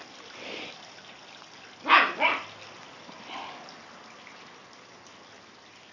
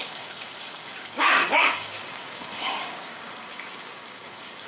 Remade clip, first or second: second